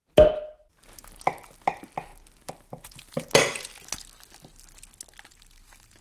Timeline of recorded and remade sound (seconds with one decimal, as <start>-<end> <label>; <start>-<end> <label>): 0.0-6.0 recorded